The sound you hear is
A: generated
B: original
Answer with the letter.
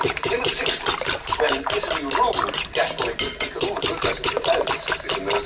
B